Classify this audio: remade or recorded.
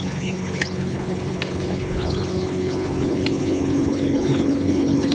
remade